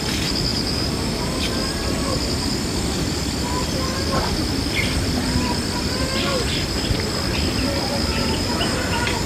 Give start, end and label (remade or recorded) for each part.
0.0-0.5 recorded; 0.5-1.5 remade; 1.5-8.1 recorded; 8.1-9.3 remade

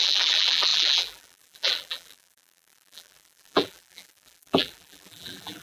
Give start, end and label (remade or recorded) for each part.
0.0-5.6 remade

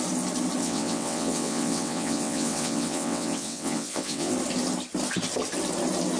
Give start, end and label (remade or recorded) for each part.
0.0-0.6 recorded; 0.6-4.3 remade; 4.3-6.2 recorded

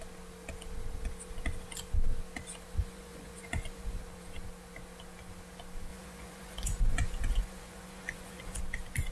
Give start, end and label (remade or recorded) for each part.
0.0-2.8 recorded; 2.8-4.0 remade; 4.0-5.9 recorded; 5.9-8.6 remade; 8.6-9.1 recorded

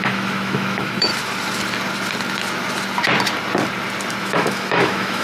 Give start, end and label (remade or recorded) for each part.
0.0-1.1 remade; 1.1-4.2 recorded; 4.2-5.2 remade